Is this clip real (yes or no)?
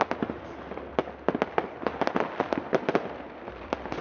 yes